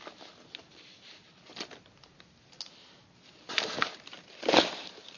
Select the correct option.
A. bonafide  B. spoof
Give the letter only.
A